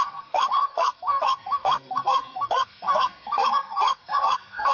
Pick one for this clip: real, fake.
fake